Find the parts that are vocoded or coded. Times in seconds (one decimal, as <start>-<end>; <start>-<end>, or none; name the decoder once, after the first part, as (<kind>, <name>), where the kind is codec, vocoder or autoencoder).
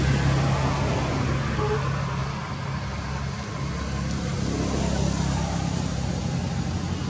none